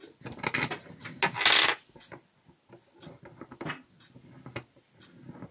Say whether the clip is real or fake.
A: real